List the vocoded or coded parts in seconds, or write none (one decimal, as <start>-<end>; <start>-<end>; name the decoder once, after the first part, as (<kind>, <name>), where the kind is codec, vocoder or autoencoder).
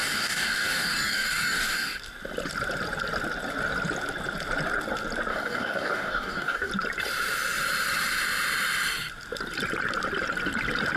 0.0-2.0 (codec, DAC); 5.3-6.7